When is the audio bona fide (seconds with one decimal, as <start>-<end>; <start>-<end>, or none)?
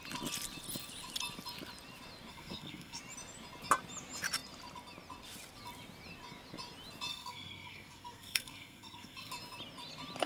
0.0-2.3; 3.0-7.1; 9.3-10.3